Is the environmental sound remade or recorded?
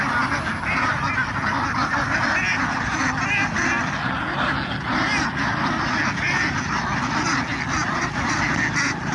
recorded